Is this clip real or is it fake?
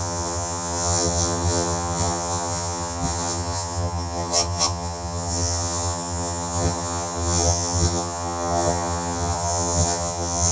fake